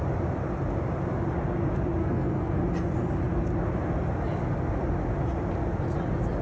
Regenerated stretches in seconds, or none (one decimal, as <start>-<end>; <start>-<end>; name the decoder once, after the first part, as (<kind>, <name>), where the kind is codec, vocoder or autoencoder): 2.0-2.6 (codec, SNAC)